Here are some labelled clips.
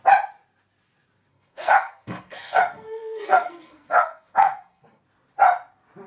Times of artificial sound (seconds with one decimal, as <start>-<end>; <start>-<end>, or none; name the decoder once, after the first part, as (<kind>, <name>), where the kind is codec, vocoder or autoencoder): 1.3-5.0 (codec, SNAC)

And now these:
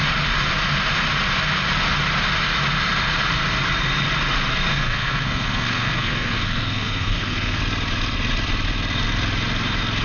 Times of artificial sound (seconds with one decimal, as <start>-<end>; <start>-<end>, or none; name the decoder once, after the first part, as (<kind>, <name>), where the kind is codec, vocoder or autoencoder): 4.7-7.6 (codec, SNAC)

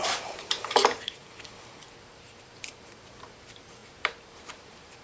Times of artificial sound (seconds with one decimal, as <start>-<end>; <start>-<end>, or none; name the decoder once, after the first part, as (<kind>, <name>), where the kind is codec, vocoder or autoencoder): 0.0-1.2 (vocoder, BigVGAN v2); 2.0-5.0